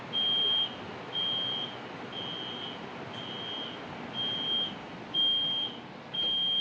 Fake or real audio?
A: real